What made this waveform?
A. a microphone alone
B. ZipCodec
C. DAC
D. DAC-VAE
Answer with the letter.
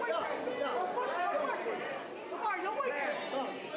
A